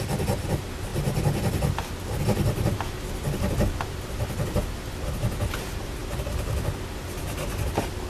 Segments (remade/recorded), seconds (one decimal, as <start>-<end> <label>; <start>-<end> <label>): 0.0-8.1 recorded